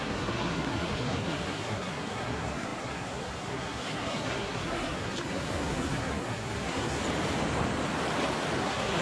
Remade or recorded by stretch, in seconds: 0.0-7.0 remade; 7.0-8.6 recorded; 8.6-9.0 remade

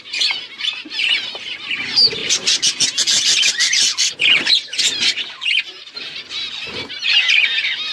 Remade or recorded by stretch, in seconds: 0.0-7.9 recorded

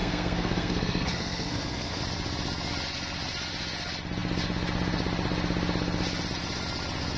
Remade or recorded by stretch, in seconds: 0.0-2.0 remade; 2.0-7.2 recorded

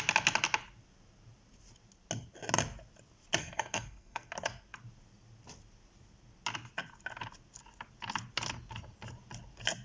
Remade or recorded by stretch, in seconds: 0.0-3.4 recorded; 3.4-4.3 remade; 4.3-9.8 recorded

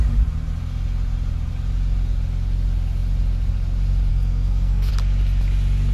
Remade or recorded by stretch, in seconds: 0.0-4.1 recorded; 4.1-4.9 remade; 4.9-5.9 recorded